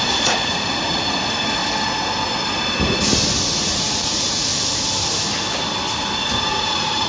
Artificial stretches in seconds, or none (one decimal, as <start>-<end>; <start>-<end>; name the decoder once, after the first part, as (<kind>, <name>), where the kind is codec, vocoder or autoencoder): 0.0-1.6 (vocoder, Vocos); 3.6-4.5; 6.5-7.1